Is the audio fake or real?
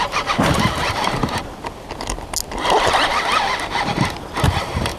real